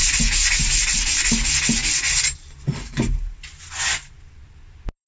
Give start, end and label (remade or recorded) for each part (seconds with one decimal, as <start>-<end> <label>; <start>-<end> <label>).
0.0-5.1 recorded